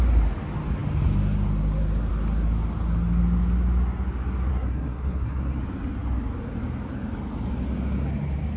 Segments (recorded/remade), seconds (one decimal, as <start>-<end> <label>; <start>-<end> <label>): 0.0-4.5 recorded; 4.5-5.6 remade; 5.6-8.6 recorded